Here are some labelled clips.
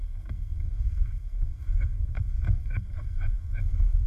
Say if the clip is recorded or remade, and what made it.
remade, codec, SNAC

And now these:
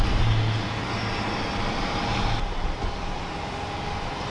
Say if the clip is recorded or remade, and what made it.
recorded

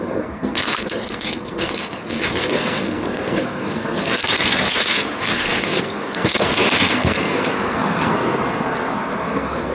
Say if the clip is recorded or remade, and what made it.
remade, codec, SNAC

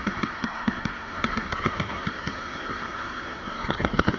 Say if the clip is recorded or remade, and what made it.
remade, codec, SNAC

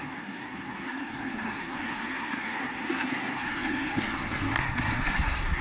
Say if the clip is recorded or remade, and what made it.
remade, codec, SNAC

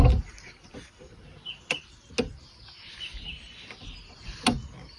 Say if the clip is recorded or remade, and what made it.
recorded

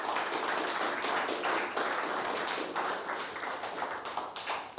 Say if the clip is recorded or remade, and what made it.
recorded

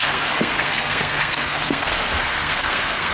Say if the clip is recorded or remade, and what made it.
remade, codec, SNAC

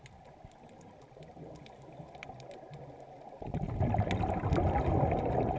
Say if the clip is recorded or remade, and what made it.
recorded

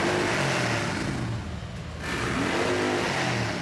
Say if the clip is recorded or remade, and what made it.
recorded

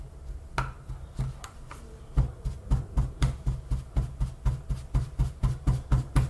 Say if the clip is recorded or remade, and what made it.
recorded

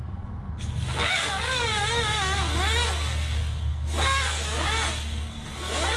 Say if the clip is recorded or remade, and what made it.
remade, codec, SNAC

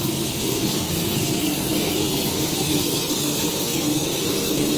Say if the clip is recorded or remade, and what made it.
remade, codec, SNAC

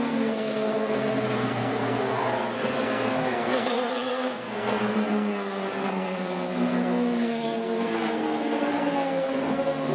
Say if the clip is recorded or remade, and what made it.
remade, codec, SNAC